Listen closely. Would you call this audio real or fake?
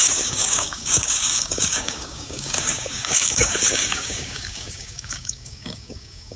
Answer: fake